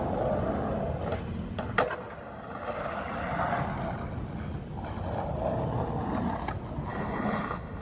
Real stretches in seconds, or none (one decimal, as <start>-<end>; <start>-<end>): 0.0-6.9